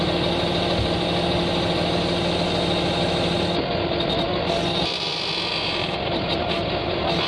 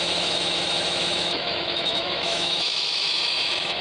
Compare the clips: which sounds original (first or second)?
first